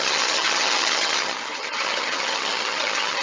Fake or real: fake